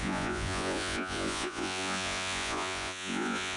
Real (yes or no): no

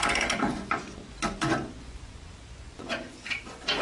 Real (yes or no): no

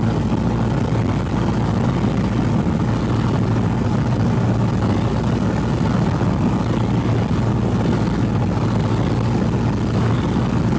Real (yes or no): yes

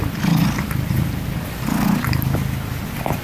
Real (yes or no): yes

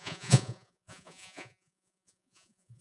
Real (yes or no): no